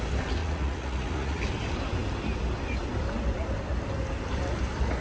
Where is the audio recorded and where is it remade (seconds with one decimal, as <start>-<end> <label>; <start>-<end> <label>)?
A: 0.0-0.4 recorded; 0.4-1.4 remade; 1.4-5.0 recorded